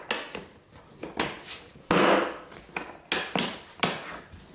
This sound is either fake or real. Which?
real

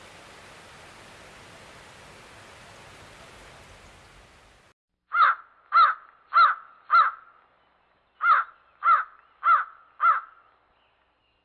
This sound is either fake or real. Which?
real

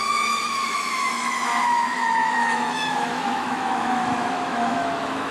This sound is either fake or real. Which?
fake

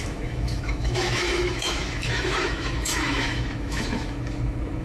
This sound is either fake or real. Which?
fake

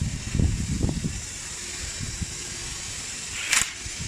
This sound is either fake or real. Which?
fake